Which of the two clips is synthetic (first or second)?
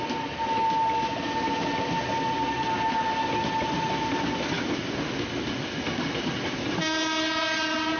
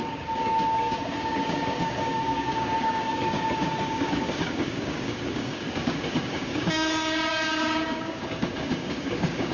second